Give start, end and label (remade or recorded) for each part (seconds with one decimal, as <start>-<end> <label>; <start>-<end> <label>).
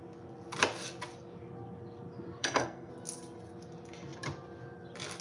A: 0.0-2.4 recorded; 2.4-2.9 remade; 2.9-5.2 recorded